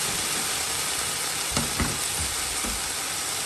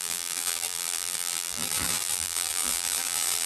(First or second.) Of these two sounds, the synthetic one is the second